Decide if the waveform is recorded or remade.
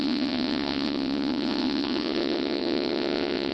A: remade